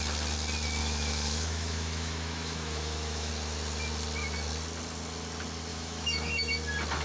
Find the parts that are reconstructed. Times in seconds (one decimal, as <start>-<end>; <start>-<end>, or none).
0.8-3.3; 5.7-6.5